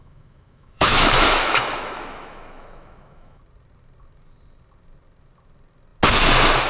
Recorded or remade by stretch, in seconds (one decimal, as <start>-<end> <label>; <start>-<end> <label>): 0.0-3.4 remade; 3.4-6.7 recorded